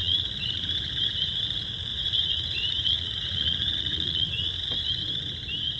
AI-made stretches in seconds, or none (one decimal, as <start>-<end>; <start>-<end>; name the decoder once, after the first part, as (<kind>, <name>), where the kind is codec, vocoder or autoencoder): 0.0-0.6 (vocoder, Vocos); 1.9-4.5